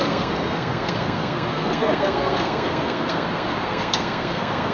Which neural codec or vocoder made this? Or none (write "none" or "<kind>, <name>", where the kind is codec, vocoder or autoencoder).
codec, SNAC